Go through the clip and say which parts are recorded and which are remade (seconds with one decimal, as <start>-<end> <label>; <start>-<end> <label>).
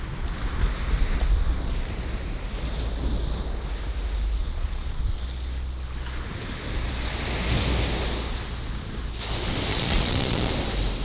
0.0-4.4 recorded; 4.4-5.0 remade; 5.0-9.7 recorded; 9.7-10.5 remade; 10.5-11.0 recorded